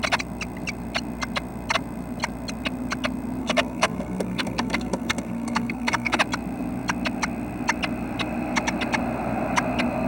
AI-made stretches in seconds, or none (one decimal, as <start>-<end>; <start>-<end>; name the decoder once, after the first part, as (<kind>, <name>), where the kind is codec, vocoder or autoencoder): 3.4-6.2 (codec, SNAC)